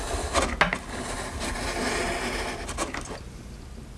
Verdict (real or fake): real